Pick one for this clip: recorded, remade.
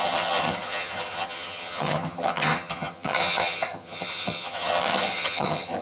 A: remade